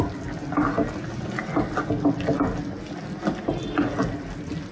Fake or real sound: real